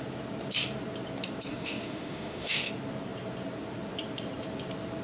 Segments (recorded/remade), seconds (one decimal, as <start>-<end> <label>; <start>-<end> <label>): 0.0-1.5 recorded; 1.5-2.7 remade; 2.7-5.0 recorded